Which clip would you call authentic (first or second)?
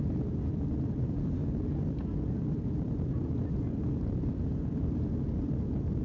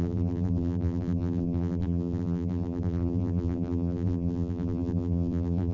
first